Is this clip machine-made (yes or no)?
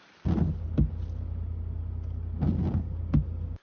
no